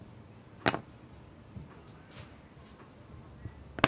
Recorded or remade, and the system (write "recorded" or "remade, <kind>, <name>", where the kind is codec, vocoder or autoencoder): recorded